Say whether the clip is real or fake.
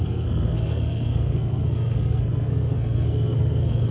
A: fake